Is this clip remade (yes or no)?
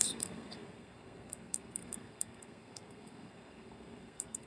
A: yes